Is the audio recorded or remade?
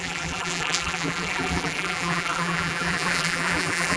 remade